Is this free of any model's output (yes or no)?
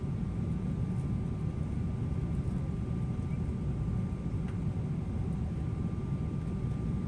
yes